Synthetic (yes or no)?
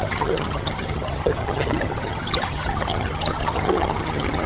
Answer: yes